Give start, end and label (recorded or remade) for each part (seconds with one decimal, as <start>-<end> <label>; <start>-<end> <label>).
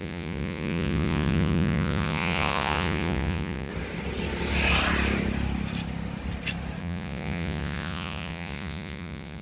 0.0-3.7 remade; 3.7-6.8 recorded; 6.8-9.4 remade